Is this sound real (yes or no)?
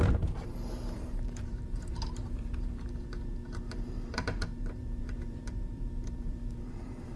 no